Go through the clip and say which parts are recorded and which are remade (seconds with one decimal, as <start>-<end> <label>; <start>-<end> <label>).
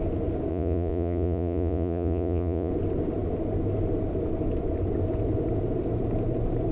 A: 0.0-0.5 recorded; 0.5-2.7 remade; 2.7-6.7 recorded